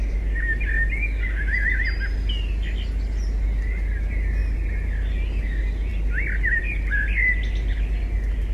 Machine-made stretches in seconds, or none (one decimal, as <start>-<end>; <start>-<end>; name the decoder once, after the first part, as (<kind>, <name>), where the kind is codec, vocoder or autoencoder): none